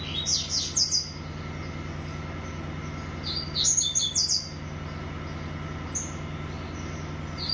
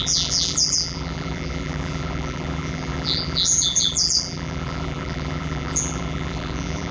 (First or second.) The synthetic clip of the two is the second